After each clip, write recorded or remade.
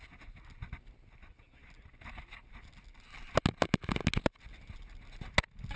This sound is recorded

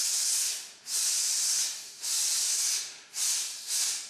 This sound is recorded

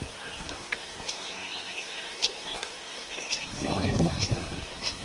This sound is remade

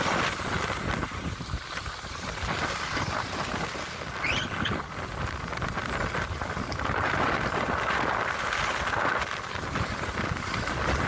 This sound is recorded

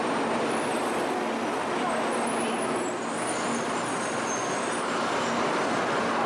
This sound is recorded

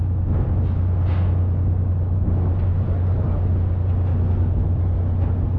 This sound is recorded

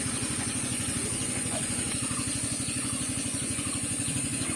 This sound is remade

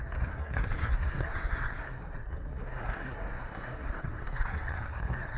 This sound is remade